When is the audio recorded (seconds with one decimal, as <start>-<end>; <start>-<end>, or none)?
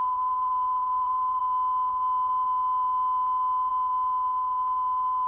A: 1.4-5.3